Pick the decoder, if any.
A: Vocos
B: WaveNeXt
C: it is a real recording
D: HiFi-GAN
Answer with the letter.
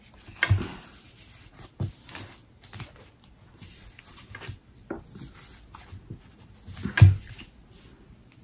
C